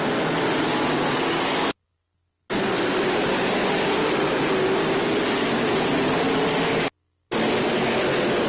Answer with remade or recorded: recorded